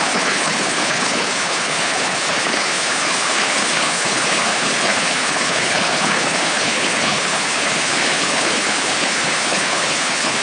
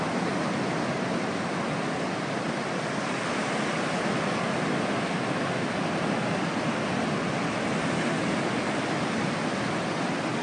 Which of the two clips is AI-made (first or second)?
first